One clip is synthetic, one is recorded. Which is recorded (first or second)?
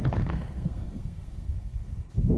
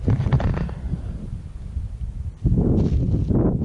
second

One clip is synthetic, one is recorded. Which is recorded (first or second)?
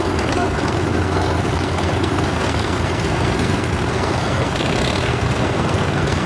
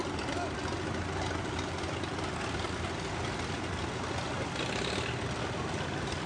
second